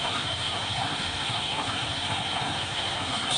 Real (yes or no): no